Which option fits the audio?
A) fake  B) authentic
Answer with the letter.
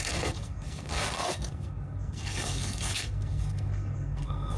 A